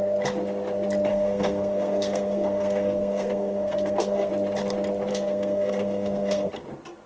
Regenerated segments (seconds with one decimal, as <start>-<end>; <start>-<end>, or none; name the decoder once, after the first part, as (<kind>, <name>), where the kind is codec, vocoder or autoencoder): 1.1-4.3 (codec, SNAC); 5.1-6.5